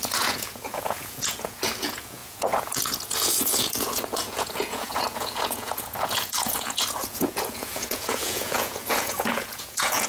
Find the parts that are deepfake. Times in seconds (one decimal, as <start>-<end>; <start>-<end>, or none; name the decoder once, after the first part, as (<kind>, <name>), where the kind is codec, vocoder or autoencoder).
0.0-10.1 (vocoder, Vocos)